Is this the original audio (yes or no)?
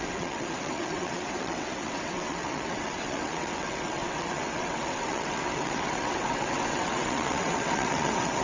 no